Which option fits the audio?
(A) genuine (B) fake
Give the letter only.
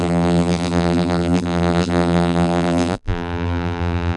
B